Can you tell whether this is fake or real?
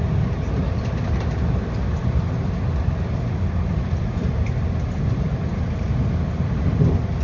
real